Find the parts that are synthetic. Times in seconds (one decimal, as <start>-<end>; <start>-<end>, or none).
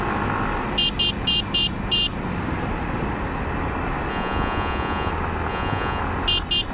4.1-5.1; 5.5-6.0